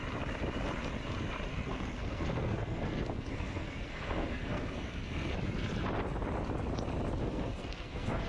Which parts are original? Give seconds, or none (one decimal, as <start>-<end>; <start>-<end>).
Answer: 0.0-1.5; 5.4-7.2